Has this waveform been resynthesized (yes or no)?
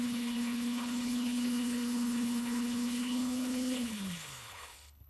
yes